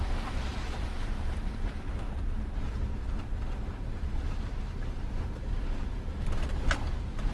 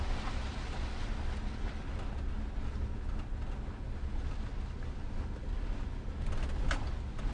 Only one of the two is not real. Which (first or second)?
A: first